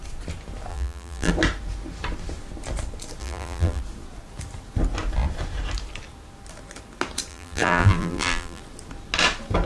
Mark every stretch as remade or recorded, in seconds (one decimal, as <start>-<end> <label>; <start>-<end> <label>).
0.0-0.7 recorded; 0.7-1.3 remade; 1.3-3.2 recorded; 3.2-3.8 remade; 3.8-7.3 recorded; 7.3-8.6 remade; 8.6-9.7 recorded